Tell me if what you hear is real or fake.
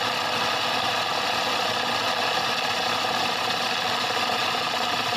real